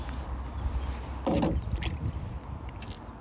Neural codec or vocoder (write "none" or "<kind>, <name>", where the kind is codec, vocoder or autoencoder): none